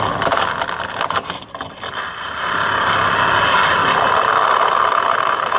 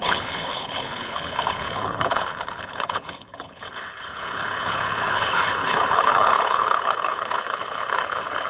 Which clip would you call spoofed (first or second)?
second